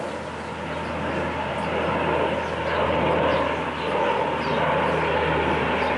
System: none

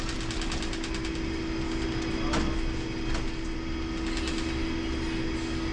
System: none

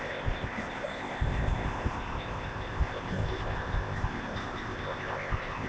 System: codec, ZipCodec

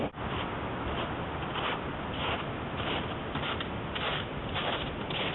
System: none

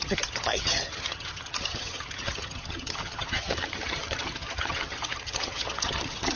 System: vocoder, HiFi-GAN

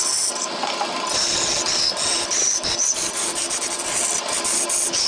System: none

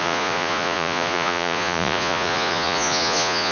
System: vocoder, Vocos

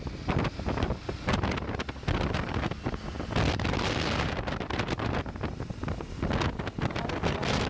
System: none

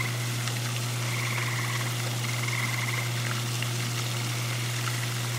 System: none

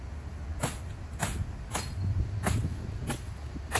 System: none